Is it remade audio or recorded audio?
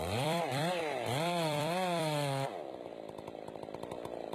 remade